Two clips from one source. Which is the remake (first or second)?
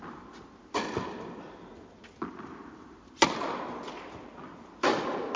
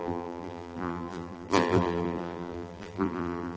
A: second